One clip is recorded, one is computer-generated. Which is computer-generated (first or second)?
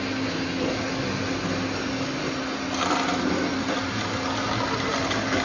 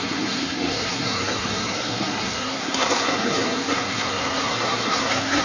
second